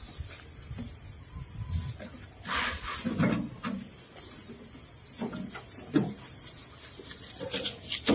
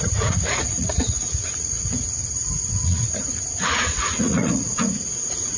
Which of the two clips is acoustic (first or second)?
first